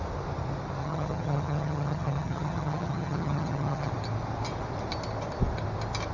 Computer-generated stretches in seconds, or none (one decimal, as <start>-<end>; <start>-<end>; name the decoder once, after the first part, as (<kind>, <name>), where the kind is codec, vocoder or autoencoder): 0.8-3.9 (vocoder, HiFi-GAN)